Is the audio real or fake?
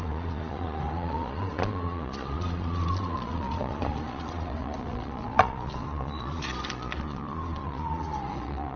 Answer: fake